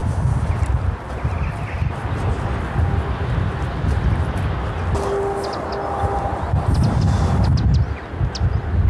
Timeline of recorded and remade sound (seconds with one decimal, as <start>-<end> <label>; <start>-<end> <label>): 0.0-8.9 recorded